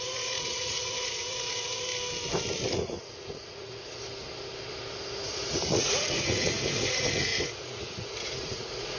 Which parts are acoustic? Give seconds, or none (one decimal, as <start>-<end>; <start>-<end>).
1.9-2.7; 3.9-5.2